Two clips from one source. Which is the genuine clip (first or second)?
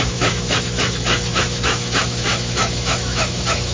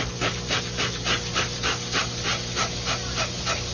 second